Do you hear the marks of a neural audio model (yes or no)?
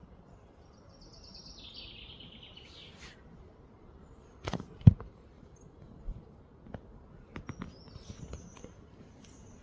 no